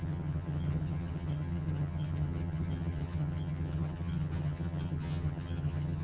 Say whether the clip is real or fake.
fake